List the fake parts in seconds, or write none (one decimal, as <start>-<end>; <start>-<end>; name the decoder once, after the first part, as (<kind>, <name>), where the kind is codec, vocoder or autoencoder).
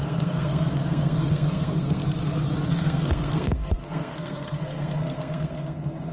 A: 0.0-2.0 (codec, SNAC); 2.7-6.1